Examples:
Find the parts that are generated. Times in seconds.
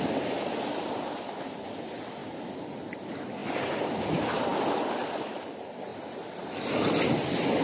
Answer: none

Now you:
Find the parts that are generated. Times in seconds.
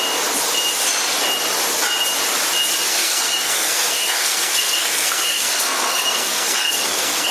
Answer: 2.9-7.3 (codec, SNAC)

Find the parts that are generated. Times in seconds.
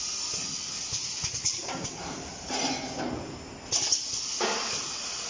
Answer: 1.0-2.6 (vocoder, BigVGAN v2)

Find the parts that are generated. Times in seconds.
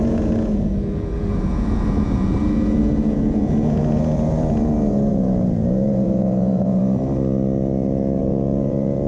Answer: 0.0-6.8 (vocoder, Vocos); 8.2-9.1